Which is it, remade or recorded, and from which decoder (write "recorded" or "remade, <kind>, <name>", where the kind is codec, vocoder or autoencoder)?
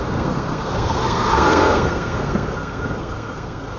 remade, codec, SNAC